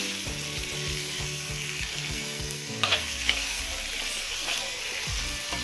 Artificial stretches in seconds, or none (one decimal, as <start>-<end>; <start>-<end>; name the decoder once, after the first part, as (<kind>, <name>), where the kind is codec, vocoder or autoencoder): 0.9-3.6 (codec, SNAC); 4.2-4.8